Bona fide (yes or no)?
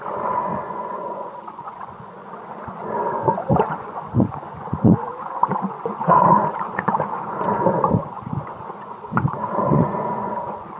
no